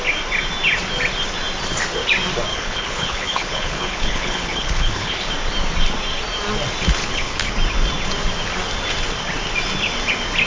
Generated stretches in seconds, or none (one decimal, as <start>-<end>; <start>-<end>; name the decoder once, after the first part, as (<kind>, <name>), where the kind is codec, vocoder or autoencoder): 2.5-5.3 (codec, HILCodec); 7.0-7.5